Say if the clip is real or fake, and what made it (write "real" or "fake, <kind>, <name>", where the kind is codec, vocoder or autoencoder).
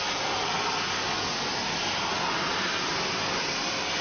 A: real